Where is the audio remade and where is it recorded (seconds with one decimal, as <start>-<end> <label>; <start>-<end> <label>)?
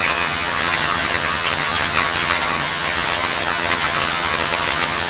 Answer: 0.0-5.1 remade